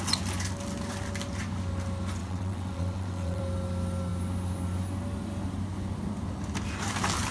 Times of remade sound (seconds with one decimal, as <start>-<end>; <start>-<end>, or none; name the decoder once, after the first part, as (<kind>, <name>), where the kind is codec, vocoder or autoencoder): 2.2-3.4 (vocoder, WaveNeXt)